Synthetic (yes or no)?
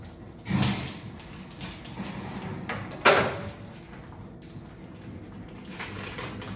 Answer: no